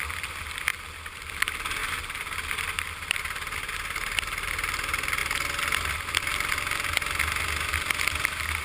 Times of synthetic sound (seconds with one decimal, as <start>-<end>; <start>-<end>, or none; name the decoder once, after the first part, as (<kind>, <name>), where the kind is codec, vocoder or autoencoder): 0.7-1.3 (vocoder, BigVGAN v2); 1.8-2.5